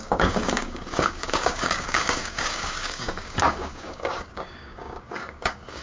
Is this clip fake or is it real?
fake